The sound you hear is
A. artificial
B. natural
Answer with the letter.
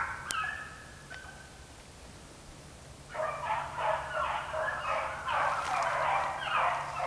B